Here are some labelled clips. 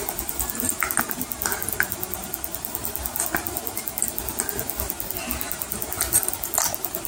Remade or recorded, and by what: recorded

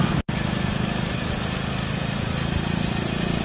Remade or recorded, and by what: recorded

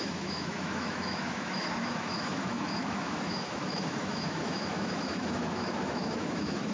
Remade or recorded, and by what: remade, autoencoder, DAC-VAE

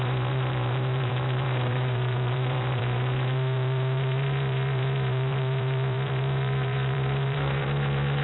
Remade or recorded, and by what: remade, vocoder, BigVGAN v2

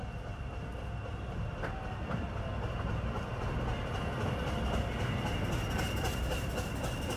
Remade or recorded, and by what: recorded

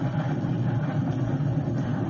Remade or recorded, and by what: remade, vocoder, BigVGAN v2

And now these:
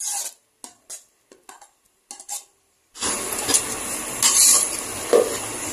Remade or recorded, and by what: recorded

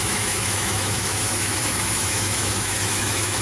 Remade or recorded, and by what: remade, autoencoder, DAC-VAE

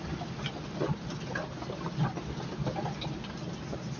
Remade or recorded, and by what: recorded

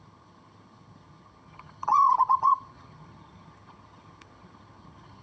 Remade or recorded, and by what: remade, vocoder, HiFi-GAN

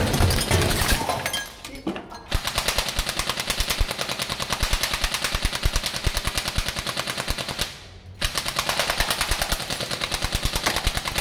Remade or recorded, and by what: recorded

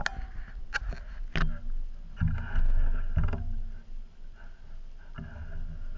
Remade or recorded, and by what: recorded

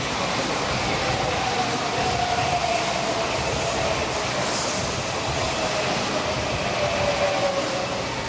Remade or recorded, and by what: recorded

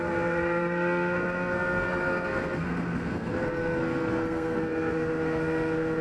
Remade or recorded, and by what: remade, codec, SNAC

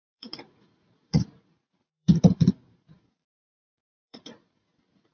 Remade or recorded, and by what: remade, vocoder, Vocos